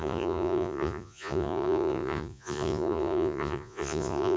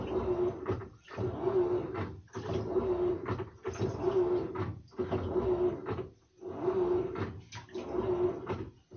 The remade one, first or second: first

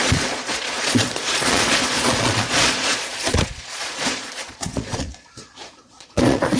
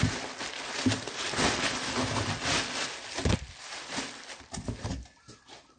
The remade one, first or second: first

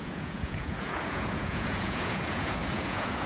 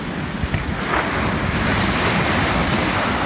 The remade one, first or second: first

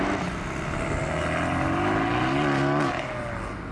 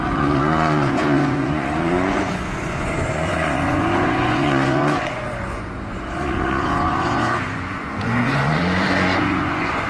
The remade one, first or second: second